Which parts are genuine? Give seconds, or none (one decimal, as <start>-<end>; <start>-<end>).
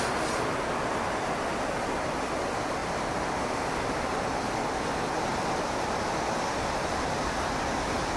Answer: 0.0-2.8; 4.7-5.3